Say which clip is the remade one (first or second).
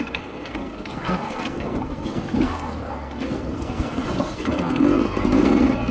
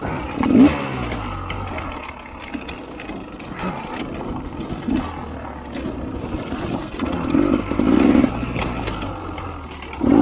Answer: first